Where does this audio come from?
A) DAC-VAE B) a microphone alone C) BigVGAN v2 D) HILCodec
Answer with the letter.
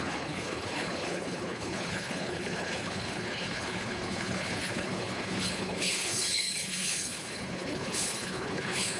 D